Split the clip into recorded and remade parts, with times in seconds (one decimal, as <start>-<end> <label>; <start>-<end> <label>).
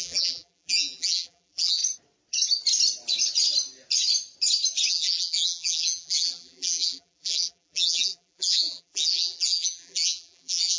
0.0-1.8 remade; 1.8-4.9 recorded; 4.9-10.8 remade